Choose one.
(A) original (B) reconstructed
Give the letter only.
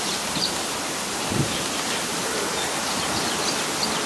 A